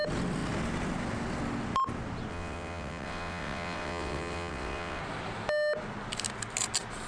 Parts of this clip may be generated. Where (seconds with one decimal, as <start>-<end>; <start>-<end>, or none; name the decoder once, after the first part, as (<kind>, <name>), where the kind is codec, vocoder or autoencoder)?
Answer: 2.3-5.0 (vocoder, WaveNeXt)